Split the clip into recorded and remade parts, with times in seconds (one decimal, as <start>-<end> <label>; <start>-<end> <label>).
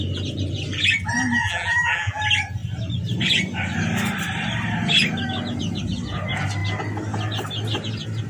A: 0.0-1.4 recorded; 1.4-2.2 remade; 2.2-8.3 recorded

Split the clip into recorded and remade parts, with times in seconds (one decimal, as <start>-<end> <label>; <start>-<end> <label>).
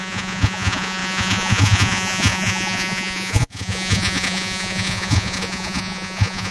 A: 0.0-6.5 remade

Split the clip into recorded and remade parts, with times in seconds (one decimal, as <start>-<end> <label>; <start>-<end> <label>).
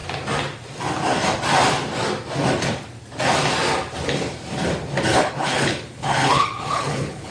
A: 0.0-5.1 recorded; 5.1-7.3 remade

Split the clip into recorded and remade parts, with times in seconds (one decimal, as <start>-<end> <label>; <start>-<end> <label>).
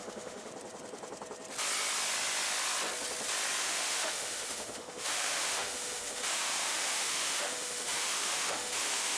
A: 0.0-0.5 remade; 0.5-3.6 recorded; 3.6-9.2 remade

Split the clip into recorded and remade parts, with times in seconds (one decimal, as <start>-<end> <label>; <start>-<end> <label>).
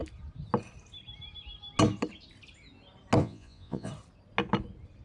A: 0.0-3.2 recorded; 3.2-3.9 remade; 3.9-5.0 recorded